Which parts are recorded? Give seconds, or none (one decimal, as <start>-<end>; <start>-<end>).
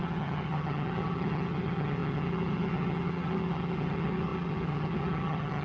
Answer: none